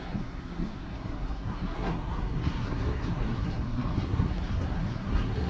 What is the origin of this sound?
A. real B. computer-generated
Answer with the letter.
B